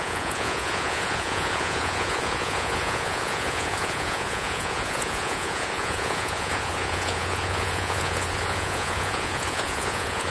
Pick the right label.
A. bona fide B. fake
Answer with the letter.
B